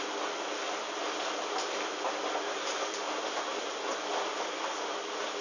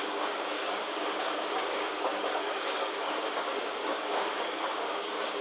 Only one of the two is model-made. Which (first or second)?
second